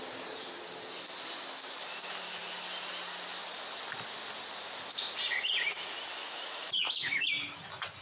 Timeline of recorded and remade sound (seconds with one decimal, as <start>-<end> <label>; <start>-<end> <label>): 0.0-6.2 recorded; 6.2-7.2 remade; 7.2-8.0 recorded